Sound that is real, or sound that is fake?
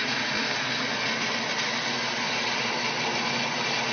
real